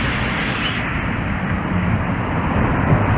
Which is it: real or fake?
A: fake